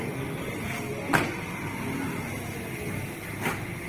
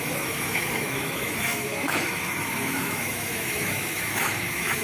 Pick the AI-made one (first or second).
second